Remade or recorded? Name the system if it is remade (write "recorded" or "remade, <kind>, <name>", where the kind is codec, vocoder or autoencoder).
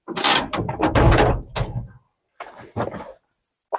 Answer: recorded